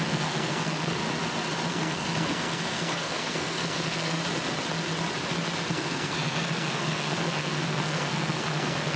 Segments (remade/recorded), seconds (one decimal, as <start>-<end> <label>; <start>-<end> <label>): 0.0-1.0 remade; 1.0-1.7 recorded; 1.7-4.2 remade; 4.2-5.7 recorded; 5.7-9.0 remade